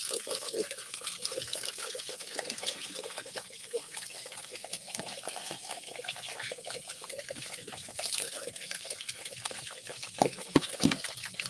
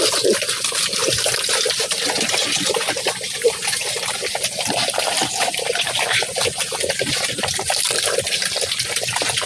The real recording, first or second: second